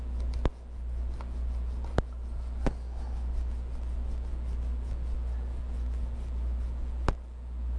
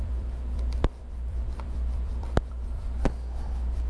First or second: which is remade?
second